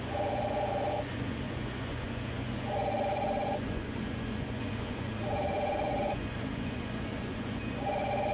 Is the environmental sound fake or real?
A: fake